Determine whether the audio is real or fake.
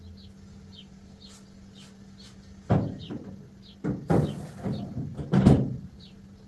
real